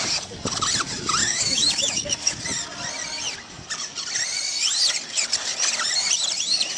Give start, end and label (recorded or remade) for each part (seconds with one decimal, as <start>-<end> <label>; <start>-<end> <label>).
0.0-1.2 recorded; 1.2-2.4 remade; 2.4-6.8 recorded